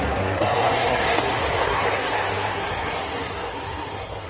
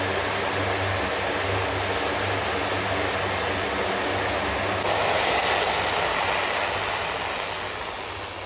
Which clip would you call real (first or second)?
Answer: second